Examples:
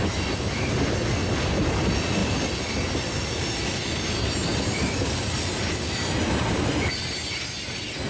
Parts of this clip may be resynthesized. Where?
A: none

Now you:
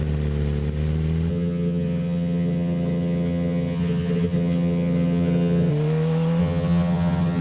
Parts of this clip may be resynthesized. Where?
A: 1.3-5.7 (vocoder, HiFi-GAN); 6.4-7.4